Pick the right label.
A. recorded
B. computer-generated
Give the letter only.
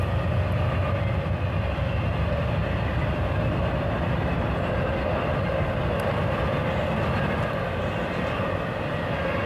A